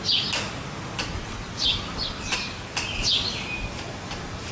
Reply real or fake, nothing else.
real